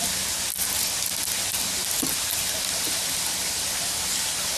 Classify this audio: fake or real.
real